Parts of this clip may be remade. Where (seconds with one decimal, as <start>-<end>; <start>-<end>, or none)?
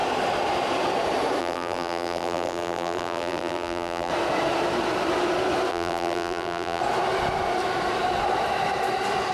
1.4-4.1; 5.7-6.8